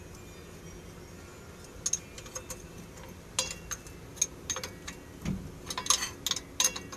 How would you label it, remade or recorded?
recorded